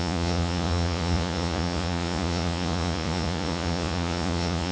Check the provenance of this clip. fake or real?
fake